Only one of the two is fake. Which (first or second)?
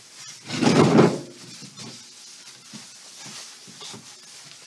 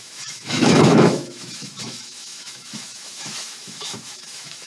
second